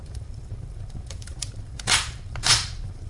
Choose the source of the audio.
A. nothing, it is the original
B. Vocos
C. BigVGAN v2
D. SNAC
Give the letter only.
C